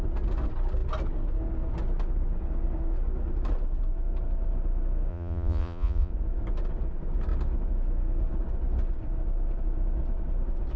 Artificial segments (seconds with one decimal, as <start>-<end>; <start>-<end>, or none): 5.1-6.1

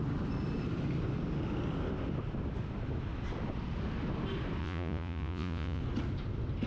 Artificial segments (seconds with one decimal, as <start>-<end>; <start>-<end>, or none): 4.6-5.8

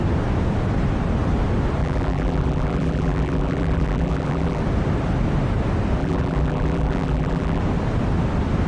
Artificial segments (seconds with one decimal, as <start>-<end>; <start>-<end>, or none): 1.8-4.6; 6.0-7.6

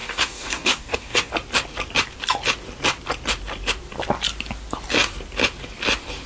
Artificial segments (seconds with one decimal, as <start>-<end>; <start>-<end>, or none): 0.0-1.3

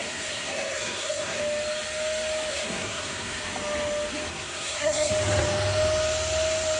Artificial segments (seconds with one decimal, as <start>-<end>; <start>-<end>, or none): 0.0-1.4; 2.5-3.4; 4.3-5.1

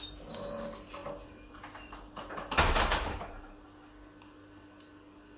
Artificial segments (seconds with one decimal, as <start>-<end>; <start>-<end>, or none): none

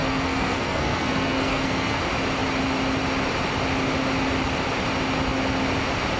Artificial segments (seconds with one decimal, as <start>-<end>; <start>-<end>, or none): 0.0-2.0

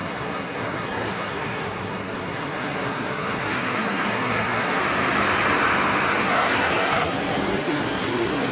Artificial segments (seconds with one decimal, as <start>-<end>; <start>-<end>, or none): 0.0-4.8; 6.1-8.5